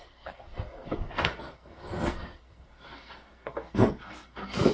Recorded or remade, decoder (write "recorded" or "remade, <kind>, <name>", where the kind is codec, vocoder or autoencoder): remade, codec, SNAC